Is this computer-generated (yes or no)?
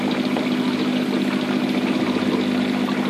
no